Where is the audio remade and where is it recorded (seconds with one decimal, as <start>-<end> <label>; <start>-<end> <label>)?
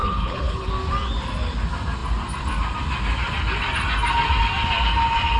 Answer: 0.0-0.7 remade; 0.7-5.4 recorded